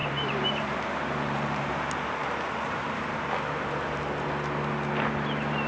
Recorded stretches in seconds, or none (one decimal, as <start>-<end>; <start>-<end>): 1.7-2.2; 2.9-5.7